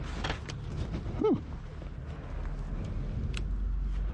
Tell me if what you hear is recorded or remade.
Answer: recorded